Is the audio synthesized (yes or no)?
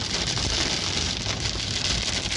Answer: no